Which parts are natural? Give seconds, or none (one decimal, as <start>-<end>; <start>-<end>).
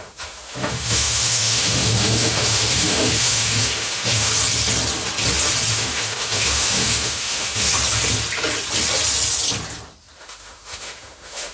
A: 4.3-5.7; 7.7-10.2